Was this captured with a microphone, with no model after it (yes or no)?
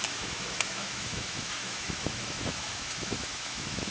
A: no